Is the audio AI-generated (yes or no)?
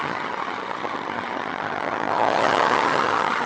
yes